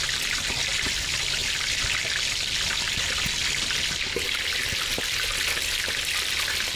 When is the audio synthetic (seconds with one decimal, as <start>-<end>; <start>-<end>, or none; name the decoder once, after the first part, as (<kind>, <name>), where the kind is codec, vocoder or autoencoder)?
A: none